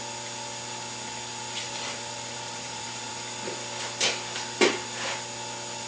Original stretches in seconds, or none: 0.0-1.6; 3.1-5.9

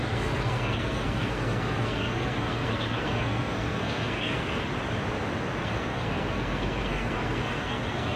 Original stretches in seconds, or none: 4.7-5.6

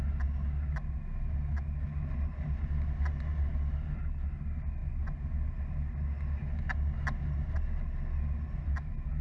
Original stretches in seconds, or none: 0.0-9.2